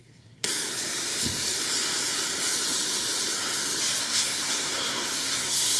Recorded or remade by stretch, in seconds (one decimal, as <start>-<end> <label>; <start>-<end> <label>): 0.0-0.5 remade; 0.5-4.0 recorded; 4.0-5.8 remade